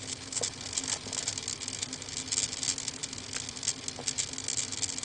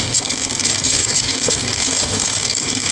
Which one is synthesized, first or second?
second